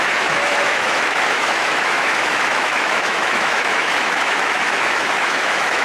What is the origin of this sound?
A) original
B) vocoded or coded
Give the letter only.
B